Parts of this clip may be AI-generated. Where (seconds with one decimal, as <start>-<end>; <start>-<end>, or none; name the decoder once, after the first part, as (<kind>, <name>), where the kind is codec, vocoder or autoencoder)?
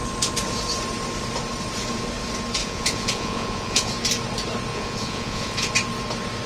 2.6-3.9 (vocoder, Vocos); 4.7-5.7